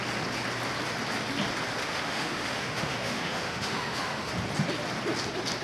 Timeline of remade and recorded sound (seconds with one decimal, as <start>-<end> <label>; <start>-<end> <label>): 0.0-1.8 recorded; 1.8-4.3 remade; 4.3-5.6 recorded